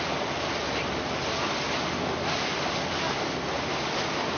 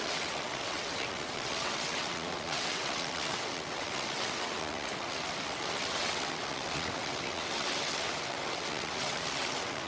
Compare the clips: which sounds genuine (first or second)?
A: first